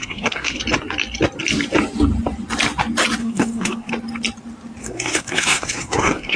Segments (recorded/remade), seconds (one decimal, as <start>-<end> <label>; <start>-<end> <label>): 0.0-0.6 remade; 0.6-3.2 recorded; 3.2-3.9 remade; 3.9-4.8 recorded; 4.8-6.4 remade